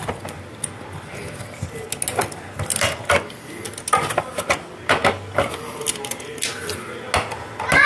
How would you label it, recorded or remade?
recorded